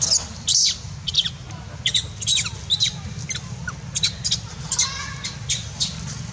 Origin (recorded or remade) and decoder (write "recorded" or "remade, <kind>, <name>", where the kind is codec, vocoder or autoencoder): recorded